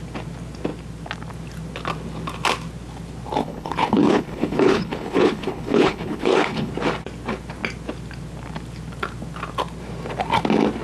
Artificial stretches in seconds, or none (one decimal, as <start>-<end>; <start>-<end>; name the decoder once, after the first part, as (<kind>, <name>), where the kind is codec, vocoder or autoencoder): 3.4-6.7 (codec, HILCodec)